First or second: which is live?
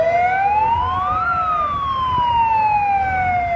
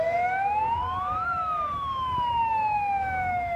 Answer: first